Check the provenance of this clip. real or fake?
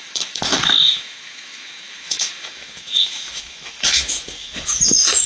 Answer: fake